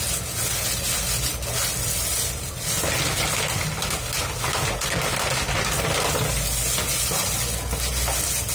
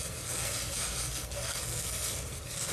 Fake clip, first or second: second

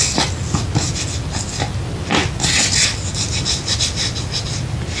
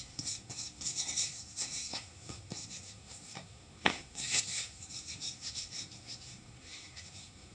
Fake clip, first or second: second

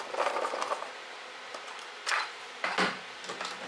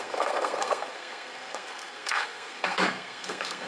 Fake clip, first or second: second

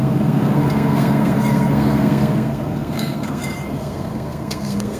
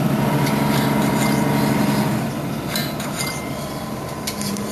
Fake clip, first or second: first